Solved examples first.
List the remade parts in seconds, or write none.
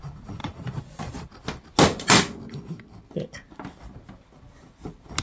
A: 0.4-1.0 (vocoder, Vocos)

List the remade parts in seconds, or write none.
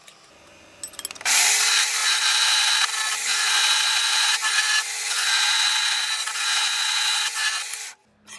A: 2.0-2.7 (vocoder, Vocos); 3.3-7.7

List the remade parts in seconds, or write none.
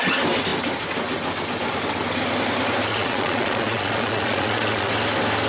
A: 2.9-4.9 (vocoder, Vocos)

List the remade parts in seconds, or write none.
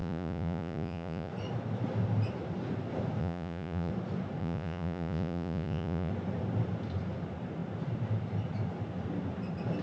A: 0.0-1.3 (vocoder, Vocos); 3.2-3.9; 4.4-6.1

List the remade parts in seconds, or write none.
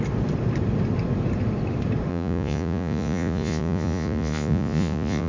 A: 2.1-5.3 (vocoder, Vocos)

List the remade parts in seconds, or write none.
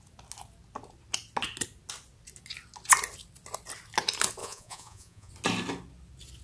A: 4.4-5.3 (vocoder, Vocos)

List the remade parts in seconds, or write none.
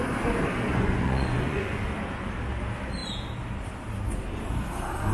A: 0.7-1.8 (vocoder, Vocos)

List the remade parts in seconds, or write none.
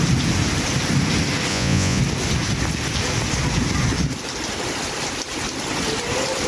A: 1.5-2.0 (vocoder, Vocos)